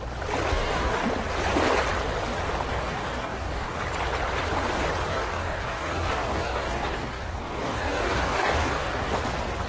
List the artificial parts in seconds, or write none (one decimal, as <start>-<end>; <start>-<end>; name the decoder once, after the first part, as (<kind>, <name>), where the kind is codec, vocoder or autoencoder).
0.5-1.1 (codec, DAC); 2.7-3.8; 5.1-9.1